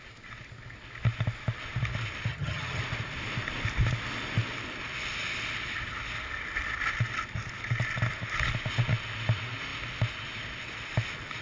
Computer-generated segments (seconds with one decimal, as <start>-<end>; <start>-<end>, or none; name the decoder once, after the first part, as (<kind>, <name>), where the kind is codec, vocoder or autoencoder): 2.3-2.8 (vocoder, HiFi-GAN)